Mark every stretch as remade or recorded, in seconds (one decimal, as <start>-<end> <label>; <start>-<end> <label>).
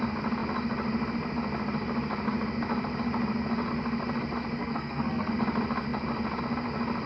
0.0-4.6 recorded; 4.6-5.3 remade; 5.3-7.1 recorded